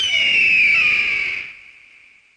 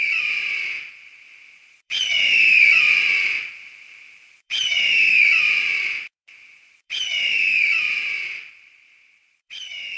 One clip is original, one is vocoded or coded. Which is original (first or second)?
first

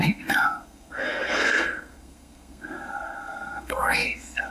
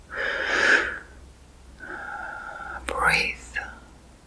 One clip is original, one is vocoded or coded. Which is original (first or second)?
second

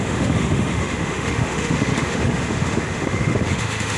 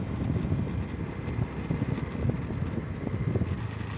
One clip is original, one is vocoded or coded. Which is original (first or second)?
second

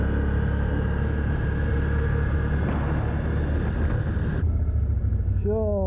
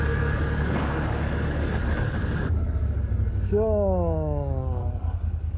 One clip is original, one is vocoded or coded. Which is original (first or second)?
first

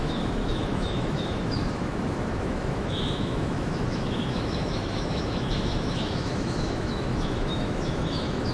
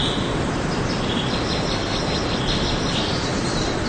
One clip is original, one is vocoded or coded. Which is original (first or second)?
second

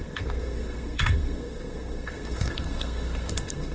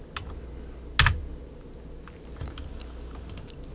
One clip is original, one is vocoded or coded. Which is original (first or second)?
second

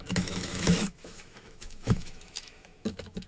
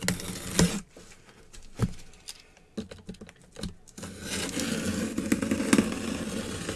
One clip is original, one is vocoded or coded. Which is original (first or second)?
second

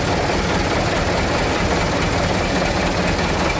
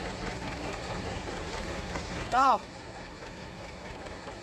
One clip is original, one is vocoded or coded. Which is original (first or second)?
first